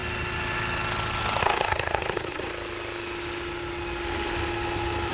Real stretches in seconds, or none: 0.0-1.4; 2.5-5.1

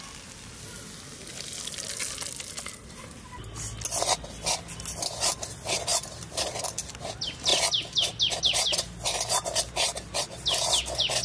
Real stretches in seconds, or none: 0.0-5.9; 6.7-11.2

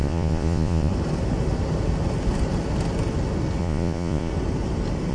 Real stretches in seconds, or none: 0.9-3.6; 4.3-5.1

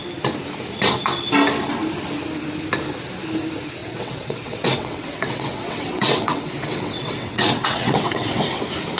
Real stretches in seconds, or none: 0.0-3.8; 8.6-9.0

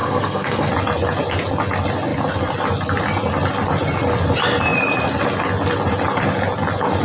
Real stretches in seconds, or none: 0.7-7.0

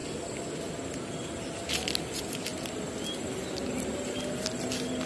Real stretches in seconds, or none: 0.0-5.1

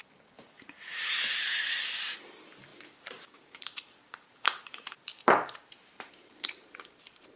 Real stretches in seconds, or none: none

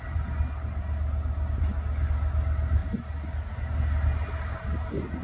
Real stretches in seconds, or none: 0.0-5.2